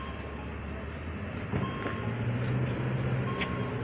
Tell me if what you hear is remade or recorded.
recorded